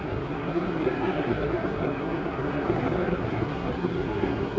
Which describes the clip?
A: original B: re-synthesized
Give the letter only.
B